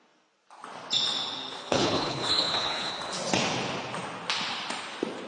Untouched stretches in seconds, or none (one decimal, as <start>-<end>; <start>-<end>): 0.0-1.6; 2.9-5.3